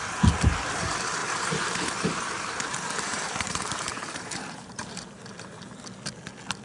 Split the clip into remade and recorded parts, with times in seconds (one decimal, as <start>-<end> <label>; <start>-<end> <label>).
0.0-1.2 recorded; 1.2-5.2 remade; 5.2-6.6 recorded